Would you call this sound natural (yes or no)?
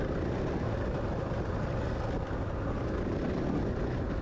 yes